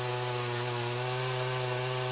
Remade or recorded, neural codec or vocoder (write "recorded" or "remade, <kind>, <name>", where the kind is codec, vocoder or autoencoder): recorded